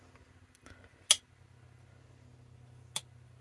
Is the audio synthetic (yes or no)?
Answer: no